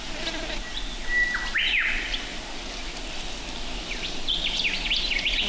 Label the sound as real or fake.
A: real